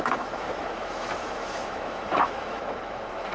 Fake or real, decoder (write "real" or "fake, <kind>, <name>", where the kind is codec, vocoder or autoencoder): fake, autoencoder, DAC-VAE